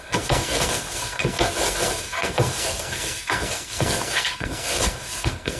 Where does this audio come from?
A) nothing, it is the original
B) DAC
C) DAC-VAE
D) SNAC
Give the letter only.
D